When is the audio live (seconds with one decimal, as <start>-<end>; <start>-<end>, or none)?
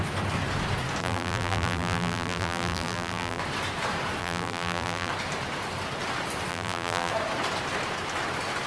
0.0-1.0; 3.4-4.2; 5.1-6.5; 7.1-8.7